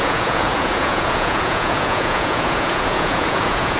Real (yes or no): no